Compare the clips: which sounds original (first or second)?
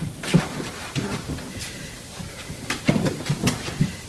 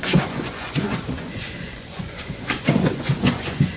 first